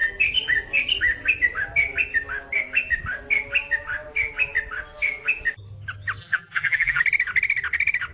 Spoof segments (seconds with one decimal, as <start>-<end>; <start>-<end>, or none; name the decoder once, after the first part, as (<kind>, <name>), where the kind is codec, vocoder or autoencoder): 6.2-7.0 (vocoder, BigVGAN v2)